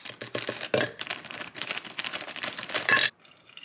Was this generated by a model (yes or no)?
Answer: no